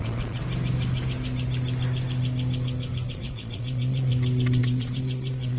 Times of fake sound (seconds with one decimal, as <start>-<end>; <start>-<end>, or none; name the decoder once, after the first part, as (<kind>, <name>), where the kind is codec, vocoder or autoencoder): 0.0-0.4 (vocoder, Vocos); 3.1-4.1; 4.6-5.6